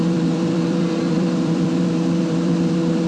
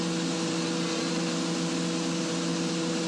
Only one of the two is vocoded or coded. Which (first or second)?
first